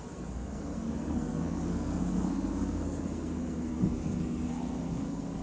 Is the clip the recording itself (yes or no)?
no